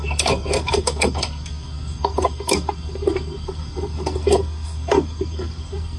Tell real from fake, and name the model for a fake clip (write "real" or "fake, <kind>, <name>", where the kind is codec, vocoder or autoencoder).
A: fake, codec, SNAC